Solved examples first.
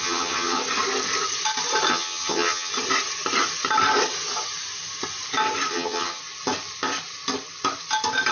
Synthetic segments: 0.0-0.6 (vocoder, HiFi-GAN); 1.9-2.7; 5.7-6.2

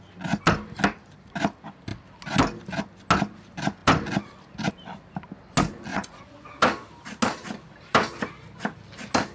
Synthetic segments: 5.9-6.5 (vocoder, Vocos)

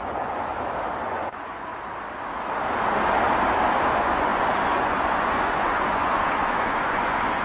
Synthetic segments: 0.0-0.5 (vocoder, Vocos); 1.1-1.7; 3.9-7.4

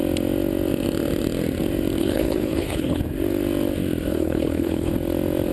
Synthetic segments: 2.0-3.0 (codec, HILCodec); 4.1-4.9

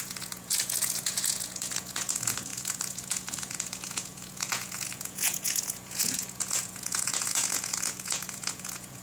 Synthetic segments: 0.0-9.0 (vocoder, Vocos)

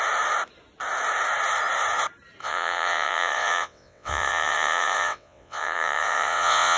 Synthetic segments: 2.4-6.8 (vocoder, WaveNeXt)